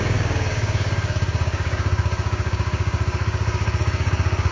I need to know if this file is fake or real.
fake